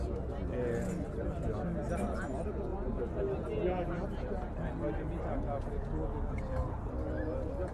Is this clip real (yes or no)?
yes